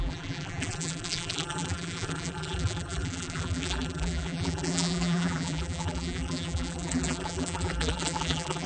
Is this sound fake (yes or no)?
yes